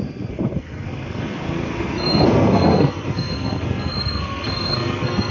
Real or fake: fake